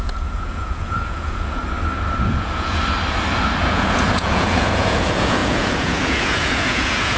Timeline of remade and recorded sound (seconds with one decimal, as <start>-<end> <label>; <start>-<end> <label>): 0.0-1.6 remade; 1.6-2.2 recorded; 2.2-2.8 remade; 2.8-3.6 recorded; 3.6-7.2 remade